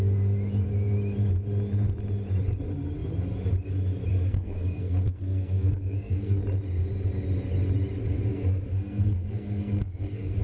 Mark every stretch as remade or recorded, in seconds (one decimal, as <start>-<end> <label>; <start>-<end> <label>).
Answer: 0.0-4.1 recorded; 4.1-6.4 remade; 6.4-8.3 recorded; 8.3-10.4 remade